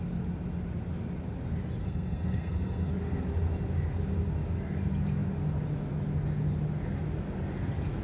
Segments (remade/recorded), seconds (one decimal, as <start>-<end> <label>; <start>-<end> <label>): 0.0-1.8 recorded; 1.8-2.9 remade; 2.9-8.0 recorded